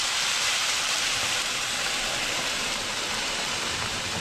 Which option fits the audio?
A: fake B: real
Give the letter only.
A